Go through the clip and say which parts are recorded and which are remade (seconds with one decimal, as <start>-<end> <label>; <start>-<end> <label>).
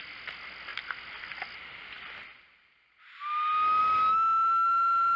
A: 0.0-5.2 recorded